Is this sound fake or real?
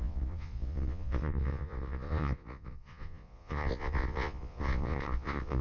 fake